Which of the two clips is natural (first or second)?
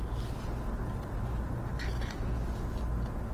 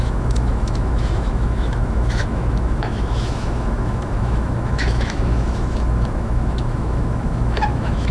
first